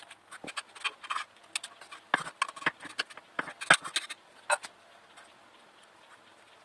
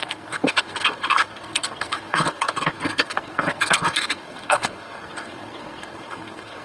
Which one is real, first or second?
first